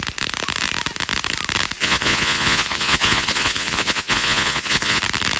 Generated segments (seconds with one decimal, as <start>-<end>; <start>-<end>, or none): 1.8-5.0